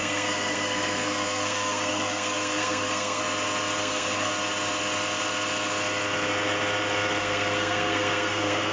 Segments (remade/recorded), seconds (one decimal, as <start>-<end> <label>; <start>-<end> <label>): 0.0-3.2 remade; 3.2-3.8 recorded; 3.8-4.3 remade; 4.3-7.2 recorded; 7.2-8.7 remade